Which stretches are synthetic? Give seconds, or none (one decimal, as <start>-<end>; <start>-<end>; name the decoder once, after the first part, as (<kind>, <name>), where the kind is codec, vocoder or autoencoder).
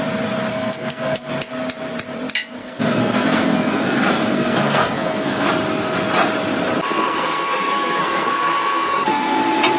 0.5-1.3 (codec, SNAC); 2.6-5.5; 7.0-9.4